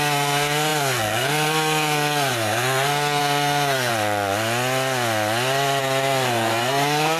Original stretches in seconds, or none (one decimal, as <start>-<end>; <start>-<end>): 3.9-5.8